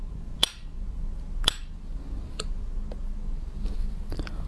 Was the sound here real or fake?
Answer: real